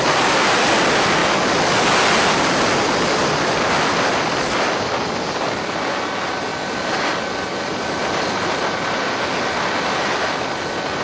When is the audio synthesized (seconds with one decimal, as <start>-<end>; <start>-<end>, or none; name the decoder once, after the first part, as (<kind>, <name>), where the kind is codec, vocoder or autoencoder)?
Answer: none